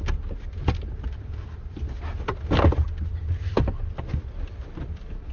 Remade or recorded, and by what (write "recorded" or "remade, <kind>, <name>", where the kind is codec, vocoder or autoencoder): recorded